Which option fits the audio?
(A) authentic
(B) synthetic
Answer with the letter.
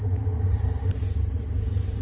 A